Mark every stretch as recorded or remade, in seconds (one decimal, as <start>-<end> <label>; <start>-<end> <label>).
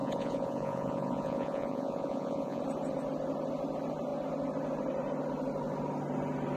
0.0-2.6 remade; 2.6-6.6 recorded